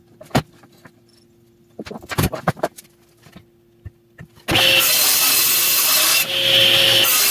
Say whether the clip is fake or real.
real